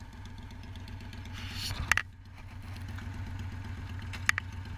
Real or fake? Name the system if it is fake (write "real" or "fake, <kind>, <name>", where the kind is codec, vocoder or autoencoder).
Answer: real